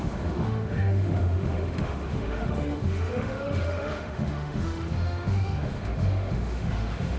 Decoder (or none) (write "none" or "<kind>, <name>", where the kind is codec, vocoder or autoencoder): autoencoder, DAC-VAE